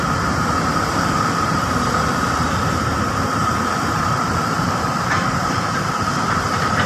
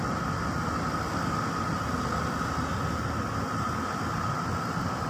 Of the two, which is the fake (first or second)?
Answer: first